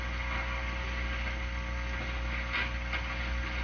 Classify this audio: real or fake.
real